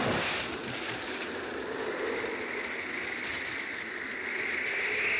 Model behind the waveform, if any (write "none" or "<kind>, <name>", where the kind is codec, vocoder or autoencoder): none